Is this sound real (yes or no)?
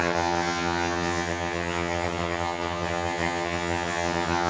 no